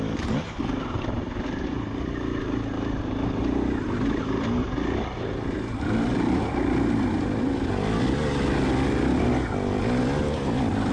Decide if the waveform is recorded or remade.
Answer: recorded